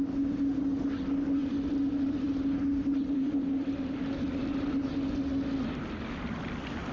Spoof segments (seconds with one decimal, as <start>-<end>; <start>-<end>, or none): 1.4-4.9